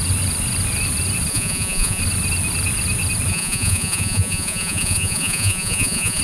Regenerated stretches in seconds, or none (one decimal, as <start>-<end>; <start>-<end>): 1.3-2.0; 3.3-6.2